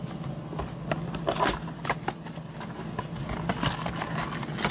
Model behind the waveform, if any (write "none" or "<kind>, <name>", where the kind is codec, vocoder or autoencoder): none